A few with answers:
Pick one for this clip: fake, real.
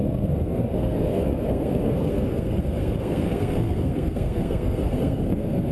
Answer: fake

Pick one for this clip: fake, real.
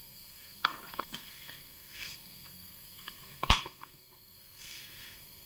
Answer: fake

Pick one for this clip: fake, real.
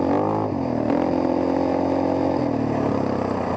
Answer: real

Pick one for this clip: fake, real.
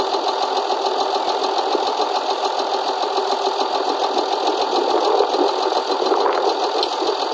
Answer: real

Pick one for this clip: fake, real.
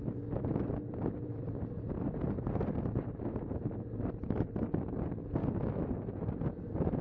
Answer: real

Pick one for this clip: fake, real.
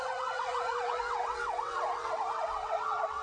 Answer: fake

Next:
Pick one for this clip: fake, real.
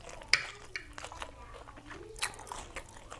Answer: real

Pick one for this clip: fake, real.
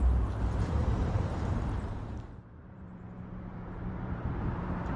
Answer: fake